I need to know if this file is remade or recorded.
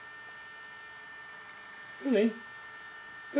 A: recorded